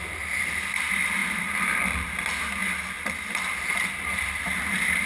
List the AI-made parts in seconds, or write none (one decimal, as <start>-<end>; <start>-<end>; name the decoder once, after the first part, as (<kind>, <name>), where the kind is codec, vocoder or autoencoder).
1.2-1.8 (vocoder, BigVGAN v2)